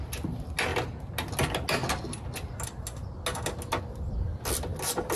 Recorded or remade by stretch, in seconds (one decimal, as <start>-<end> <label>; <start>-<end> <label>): 0.0-5.2 recorded

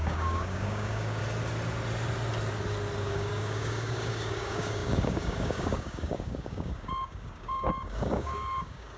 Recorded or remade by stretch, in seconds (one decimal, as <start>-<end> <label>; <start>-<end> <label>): 0.0-1.2 remade; 1.2-3.0 recorded; 3.0-9.0 remade